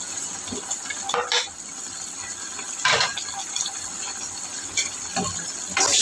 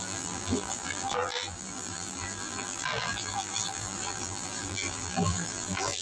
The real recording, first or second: first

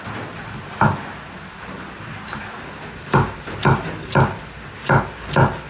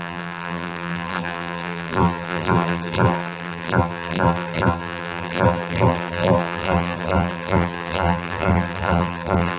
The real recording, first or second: first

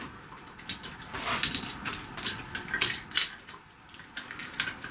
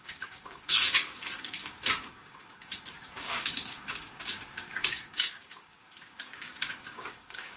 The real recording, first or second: first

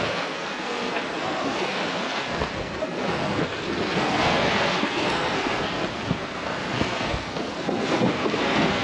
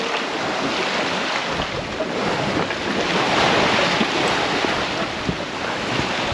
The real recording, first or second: second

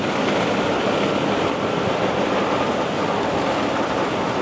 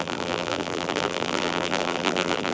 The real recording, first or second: first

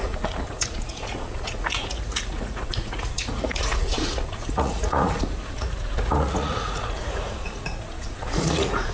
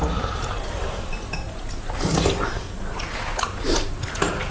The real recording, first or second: second